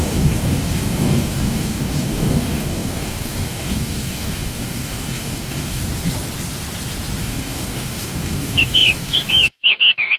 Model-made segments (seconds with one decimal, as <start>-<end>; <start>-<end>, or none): 0.0-5.8; 7.2-10.2